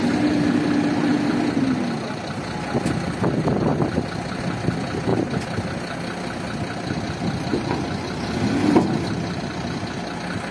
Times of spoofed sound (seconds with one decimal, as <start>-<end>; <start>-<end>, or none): 7.5-8.1